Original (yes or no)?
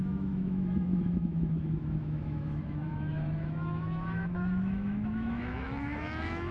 no